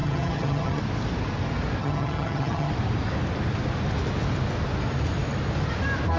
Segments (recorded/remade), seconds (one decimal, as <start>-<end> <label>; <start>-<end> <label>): 0.0-0.8 remade; 0.8-1.8 recorded; 1.8-2.7 remade; 2.7-6.2 recorded